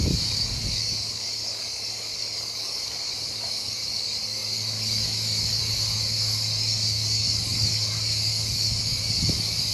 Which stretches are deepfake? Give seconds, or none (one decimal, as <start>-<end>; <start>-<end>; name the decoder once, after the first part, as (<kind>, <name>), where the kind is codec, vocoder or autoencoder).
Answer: 0.0-9.7 (codec, DAC)